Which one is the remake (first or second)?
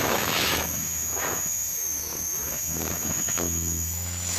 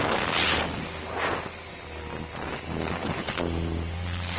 first